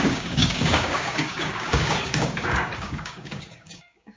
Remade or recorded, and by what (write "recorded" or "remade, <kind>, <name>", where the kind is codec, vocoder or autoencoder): remade, codec, DAC